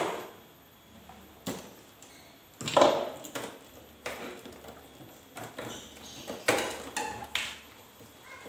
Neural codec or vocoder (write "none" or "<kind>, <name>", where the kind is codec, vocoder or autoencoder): none